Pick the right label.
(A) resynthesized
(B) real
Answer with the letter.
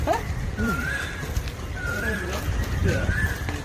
A